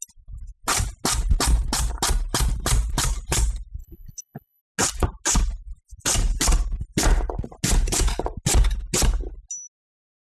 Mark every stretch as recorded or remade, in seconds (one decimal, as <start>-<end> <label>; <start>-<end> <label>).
0.0-3.8 recorded; 3.8-4.6 remade; 4.6-10.3 recorded